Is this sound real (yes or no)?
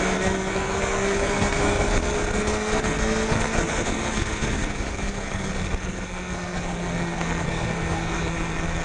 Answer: no